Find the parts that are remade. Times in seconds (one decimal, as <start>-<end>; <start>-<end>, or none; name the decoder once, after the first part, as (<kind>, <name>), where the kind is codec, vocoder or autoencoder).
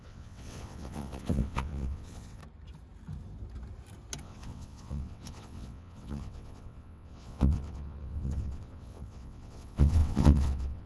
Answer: 0.0-2.4 (vocoder, WaveNeXt); 4.2-10.9